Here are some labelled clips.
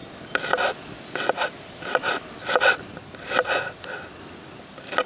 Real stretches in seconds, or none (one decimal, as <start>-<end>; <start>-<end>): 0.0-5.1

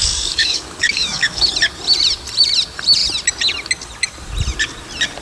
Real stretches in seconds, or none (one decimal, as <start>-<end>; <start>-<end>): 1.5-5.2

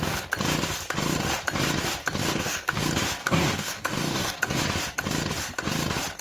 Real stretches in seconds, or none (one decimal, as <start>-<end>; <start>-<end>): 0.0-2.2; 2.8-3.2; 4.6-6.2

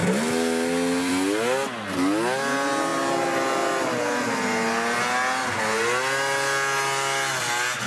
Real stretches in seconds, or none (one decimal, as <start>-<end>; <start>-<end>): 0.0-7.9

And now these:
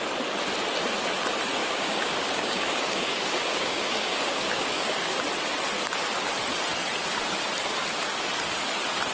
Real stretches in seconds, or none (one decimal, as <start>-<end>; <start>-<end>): 0.0-1.6; 5.2-9.1

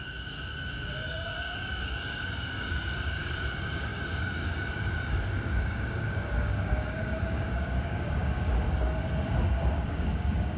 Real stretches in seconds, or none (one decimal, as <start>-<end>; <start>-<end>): none

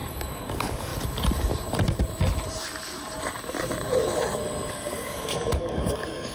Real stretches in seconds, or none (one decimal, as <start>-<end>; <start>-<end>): 0.9-4.7